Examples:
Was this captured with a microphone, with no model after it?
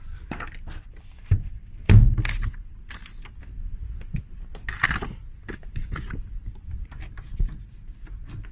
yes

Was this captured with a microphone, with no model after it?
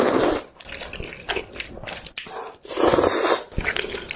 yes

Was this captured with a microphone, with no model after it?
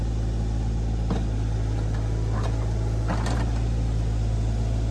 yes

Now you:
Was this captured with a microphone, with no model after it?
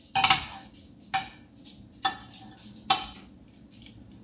yes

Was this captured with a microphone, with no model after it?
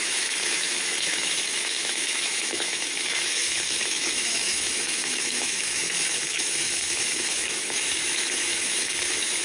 no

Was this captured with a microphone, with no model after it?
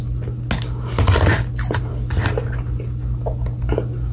yes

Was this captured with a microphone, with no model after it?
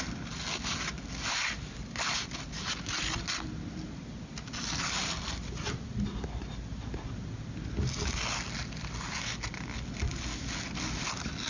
yes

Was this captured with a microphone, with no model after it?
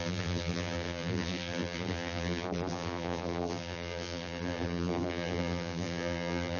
no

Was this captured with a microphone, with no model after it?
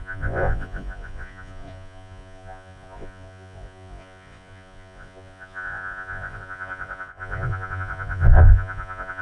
no